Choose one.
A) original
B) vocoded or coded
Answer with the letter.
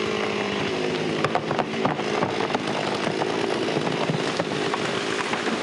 A